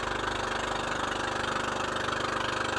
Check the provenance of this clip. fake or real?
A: real